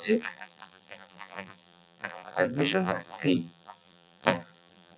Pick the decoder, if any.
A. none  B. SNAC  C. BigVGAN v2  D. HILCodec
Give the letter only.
C